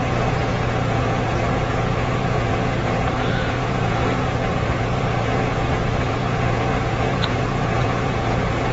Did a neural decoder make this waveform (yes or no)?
yes